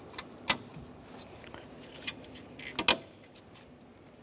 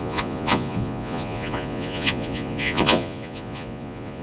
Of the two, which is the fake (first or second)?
second